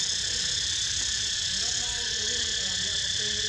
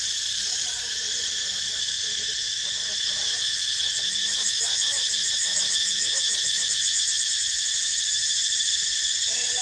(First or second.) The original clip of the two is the first